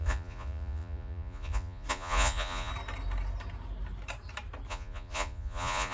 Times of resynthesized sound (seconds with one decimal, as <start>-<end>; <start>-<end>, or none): 0.0-2.7; 4.7-5.9